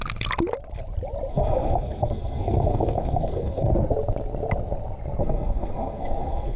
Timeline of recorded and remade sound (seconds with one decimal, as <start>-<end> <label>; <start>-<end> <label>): 0.0-1.3 recorded; 1.3-3.7 remade; 3.7-5.2 recorded; 5.2-6.6 remade